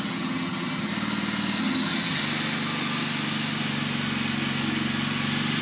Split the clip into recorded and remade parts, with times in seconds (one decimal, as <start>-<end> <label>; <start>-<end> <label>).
0.0-0.9 remade; 0.9-1.6 recorded; 1.6-2.2 remade; 2.2-5.6 recorded